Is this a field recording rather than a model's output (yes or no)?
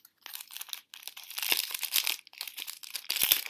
yes